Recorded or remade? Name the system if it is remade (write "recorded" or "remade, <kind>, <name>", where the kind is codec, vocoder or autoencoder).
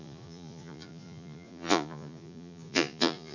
remade, vocoder, Vocos